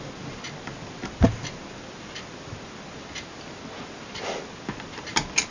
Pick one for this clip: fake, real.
real